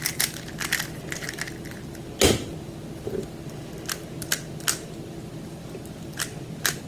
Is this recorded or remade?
recorded